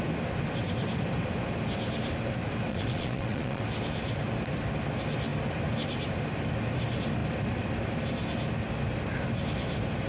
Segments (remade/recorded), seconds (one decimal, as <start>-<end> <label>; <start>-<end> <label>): 0.0-2.7 recorded; 2.7-3.6 remade; 3.6-10.1 recorded